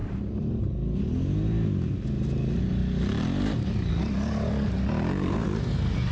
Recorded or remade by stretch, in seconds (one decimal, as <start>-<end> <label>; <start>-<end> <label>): 0.0-0.5 remade; 0.5-6.1 recorded

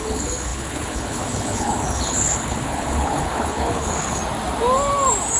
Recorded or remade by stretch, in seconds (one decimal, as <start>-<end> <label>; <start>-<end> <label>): 0.0-4.2 remade; 4.2-5.4 recorded